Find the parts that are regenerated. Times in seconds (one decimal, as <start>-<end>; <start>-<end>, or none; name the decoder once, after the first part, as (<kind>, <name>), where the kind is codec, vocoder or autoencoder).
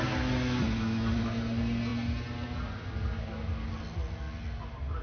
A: none